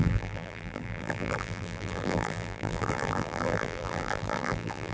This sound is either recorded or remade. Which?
remade